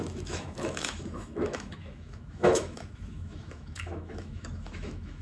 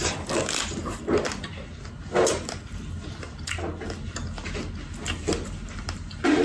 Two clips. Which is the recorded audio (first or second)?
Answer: second